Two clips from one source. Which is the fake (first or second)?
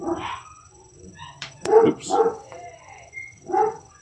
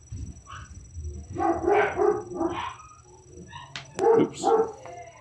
first